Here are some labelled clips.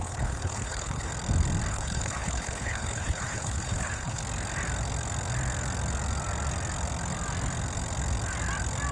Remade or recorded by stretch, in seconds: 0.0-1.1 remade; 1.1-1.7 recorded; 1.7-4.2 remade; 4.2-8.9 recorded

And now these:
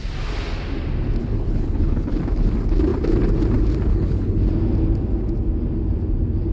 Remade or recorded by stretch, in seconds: 0.0-1.2 recorded; 1.2-2.2 remade; 2.2-3.9 recorded; 3.9-4.5 remade; 4.5-6.5 recorded

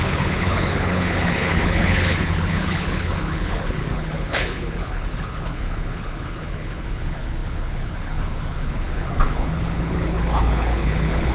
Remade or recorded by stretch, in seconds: 0.0-11.3 remade

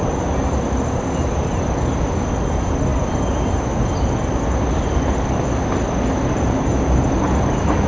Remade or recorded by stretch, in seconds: 0.0-7.9 recorded

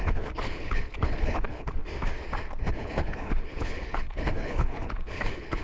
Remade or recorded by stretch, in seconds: 0.0-1.8 remade; 1.8-2.7 recorded; 2.7-5.6 remade

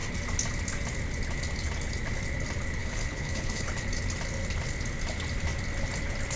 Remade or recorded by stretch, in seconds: 0.0-2.8 recorded; 2.8-3.7 remade; 3.7-6.4 recorded

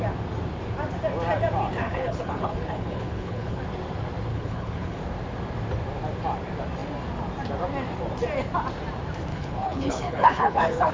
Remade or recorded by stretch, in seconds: 0.0-1.8 recorded; 1.8-3.6 remade; 3.6-4.3 recorded; 4.3-5.0 remade; 5.0-9.3 recorded; 9.3-10.9 remade